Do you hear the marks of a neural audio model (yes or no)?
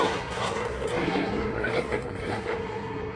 yes